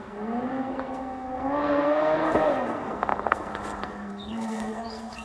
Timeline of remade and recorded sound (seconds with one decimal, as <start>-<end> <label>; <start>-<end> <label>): 0.0-5.2 remade